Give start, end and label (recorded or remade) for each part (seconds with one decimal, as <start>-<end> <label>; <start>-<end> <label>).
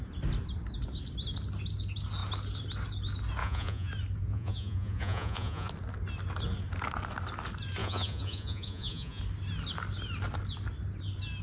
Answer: 0.0-3.4 recorded; 3.4-3.9 remade; 3.9-4.3 recorded; 4.3-5.7 remade; 5.7-7.8 recorded; 7.8-9.2 remade; 9.2-11.4 recorded